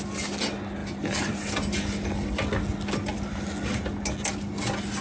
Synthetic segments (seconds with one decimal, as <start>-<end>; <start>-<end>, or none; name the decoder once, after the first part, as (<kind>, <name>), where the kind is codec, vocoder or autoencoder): none